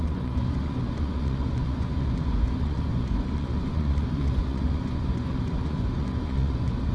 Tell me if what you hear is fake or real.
fake